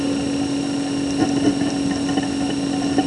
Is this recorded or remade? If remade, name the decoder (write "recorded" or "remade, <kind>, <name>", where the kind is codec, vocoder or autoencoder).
recorded